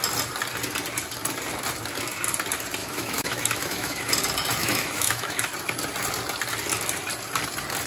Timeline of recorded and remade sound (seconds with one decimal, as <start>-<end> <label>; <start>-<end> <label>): 0.0-2.8 recorded; 2.8-4.1 remade; 4.1-4.6 recorded; 4.6-5.5 remade; 5.5-7.9 recorded